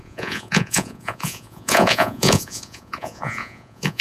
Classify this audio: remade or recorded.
remade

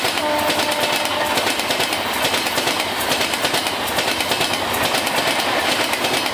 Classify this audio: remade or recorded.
recorded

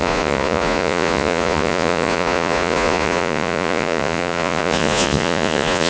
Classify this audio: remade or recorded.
remade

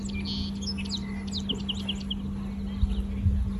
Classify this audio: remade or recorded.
recorded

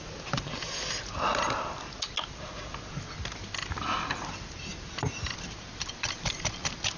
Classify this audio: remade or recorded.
recorded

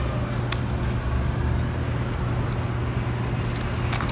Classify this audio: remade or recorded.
recorded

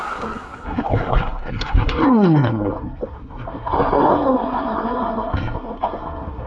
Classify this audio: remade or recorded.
remade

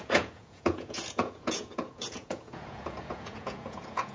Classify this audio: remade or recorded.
remade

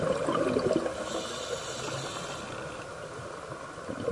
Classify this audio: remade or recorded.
recorded